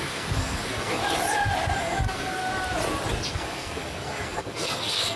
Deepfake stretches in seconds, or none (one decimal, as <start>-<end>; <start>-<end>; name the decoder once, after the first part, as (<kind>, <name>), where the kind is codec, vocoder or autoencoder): 0.0-1.0 (codec, SNAC); 1.8-2.4; 3.3-5.2